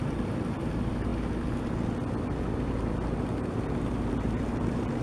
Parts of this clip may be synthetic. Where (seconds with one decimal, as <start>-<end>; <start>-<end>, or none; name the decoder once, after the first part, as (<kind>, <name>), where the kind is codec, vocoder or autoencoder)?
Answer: 0.0-1.1 (vocoder, BigVGAN v2); 4.1-5.0